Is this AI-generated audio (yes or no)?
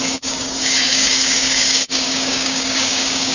yes